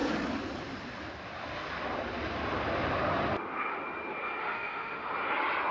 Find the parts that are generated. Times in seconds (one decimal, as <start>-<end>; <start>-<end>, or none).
4.4-5.1